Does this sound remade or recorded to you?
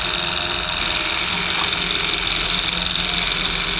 recorded